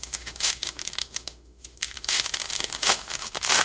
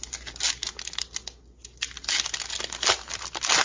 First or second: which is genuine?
second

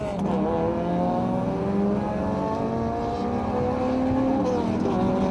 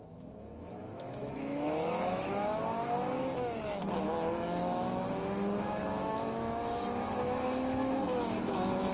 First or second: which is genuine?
first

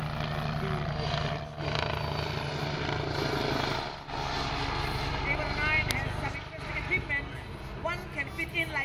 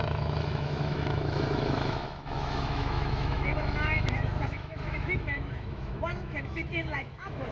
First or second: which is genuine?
first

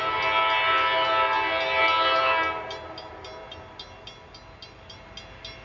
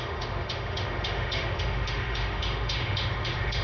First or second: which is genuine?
first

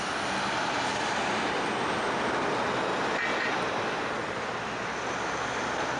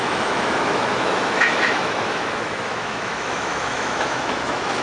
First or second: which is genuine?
first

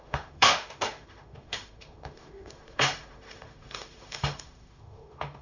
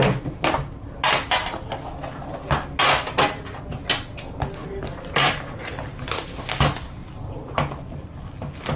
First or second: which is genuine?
second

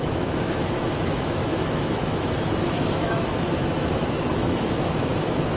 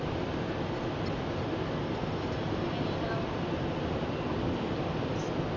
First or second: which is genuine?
second